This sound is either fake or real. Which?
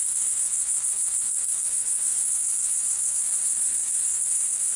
fake